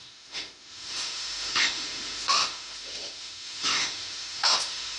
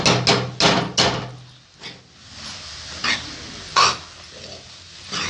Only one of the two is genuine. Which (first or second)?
second